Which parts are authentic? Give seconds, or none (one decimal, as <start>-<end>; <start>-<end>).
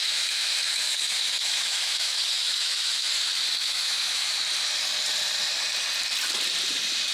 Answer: 3.2-3.6; 4.4-7.1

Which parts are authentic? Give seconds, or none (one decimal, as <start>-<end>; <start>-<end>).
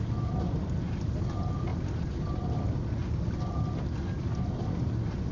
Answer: 0.0-5.3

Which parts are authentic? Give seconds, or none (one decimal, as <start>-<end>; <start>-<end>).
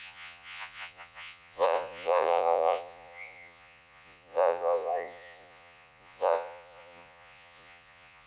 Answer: none